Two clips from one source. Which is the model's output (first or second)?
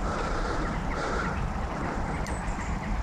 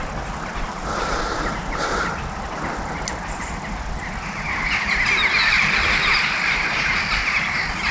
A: first